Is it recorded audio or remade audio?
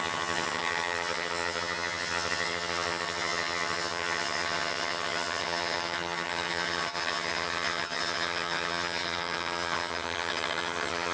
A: remade